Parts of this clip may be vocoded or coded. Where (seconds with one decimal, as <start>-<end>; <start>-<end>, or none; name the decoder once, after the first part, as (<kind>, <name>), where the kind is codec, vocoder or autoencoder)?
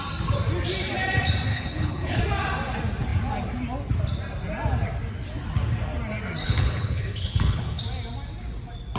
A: 1.5-2.2 (codec, HILCodec); 6.4-7.8